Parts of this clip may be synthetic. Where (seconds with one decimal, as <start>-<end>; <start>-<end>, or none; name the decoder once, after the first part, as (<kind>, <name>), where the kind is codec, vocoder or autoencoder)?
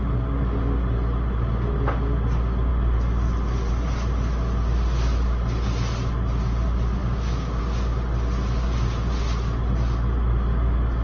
7.0-7.6 (codec, DAC)